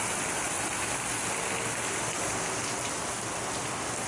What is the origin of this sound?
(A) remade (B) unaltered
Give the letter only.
B